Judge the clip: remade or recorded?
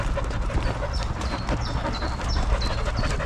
recorded